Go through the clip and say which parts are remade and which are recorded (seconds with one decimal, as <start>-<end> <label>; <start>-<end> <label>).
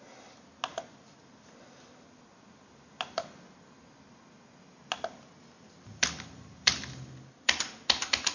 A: 0.0-8.3 recorded